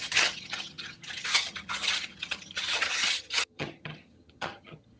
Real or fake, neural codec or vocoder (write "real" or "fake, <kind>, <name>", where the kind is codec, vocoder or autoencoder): fake, vocoder, HiFi-GAN